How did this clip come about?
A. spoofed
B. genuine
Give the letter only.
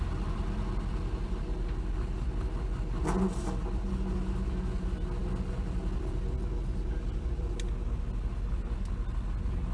B